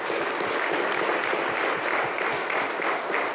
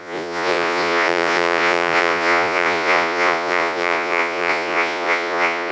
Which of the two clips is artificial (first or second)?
second